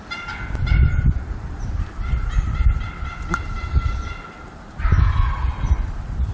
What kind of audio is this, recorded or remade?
recorded